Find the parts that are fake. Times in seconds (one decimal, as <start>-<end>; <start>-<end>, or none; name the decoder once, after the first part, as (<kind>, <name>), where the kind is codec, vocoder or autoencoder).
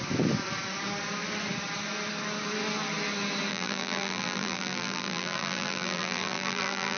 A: 3.5-7.0 (vocoder, BigVGAN v2)